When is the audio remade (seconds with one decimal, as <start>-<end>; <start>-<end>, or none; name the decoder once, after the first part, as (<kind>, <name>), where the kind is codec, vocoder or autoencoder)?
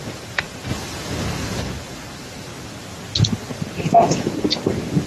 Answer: 0.0-2.5 (vocoder, BigVGAN v2); 3.3-5.1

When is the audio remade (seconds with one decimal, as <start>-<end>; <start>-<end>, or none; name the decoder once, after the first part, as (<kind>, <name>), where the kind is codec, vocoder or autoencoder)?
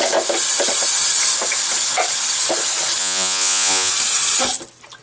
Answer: 3.0-3.9 (vocoder, Vocos)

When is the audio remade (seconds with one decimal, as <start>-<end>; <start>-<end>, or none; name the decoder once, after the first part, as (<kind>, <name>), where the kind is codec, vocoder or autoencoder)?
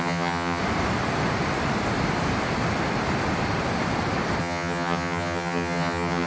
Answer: 0.0-0.6 (vocoder, HiFi-GAN); 4.4-6.3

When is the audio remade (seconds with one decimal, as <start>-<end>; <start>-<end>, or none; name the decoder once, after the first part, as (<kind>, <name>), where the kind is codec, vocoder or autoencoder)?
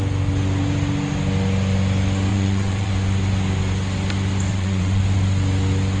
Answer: 2.3-2.9 (vocoder, WaveNeXt); 4.5-5.0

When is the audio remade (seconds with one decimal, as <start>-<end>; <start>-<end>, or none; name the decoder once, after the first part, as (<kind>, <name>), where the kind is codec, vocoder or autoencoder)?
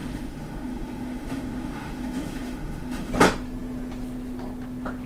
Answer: 0.0-3.1 (autoencoder, DAC-VAE)